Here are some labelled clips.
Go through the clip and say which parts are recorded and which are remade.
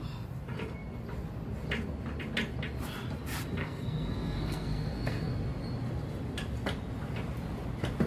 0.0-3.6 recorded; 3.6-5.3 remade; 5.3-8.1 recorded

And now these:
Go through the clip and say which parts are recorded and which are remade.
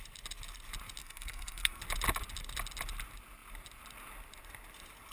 0.0-1.0 recorded; 1.0-1.8 remade; 1.8-5.1 recorded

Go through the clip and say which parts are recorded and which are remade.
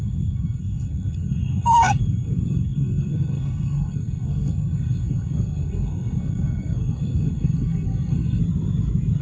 0.0-8.4 remade; 8.4-9.2 recorded